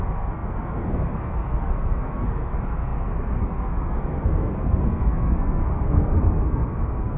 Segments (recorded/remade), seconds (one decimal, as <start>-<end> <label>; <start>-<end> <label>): 0.0-7.2 remade